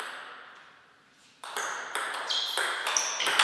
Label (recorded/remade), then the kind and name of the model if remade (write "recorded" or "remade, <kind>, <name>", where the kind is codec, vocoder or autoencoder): recorded